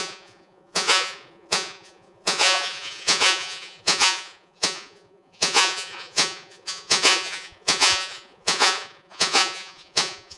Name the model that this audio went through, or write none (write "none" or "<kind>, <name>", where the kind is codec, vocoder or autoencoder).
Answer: vocoder, Vocos